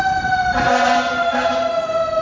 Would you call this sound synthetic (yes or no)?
no